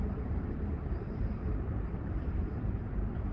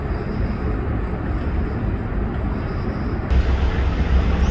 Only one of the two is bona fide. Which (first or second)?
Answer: second